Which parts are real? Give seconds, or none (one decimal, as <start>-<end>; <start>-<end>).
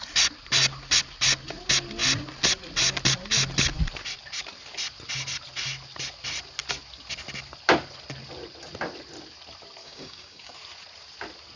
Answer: 0.0-9.8; 10.5-11.6